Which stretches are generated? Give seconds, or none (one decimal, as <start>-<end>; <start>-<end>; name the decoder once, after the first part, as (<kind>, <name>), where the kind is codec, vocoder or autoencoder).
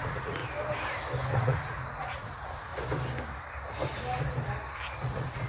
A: 0.0-0.4 (vocoder, Vocos); 1.3-2.7; 5.0-5.5